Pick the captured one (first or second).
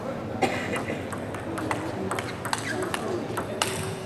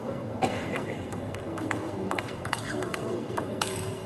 first